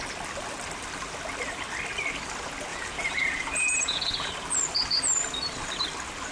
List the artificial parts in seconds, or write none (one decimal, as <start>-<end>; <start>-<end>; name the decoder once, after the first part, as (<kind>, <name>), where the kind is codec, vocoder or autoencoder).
2.7-4.3 (vocoder, Vocos)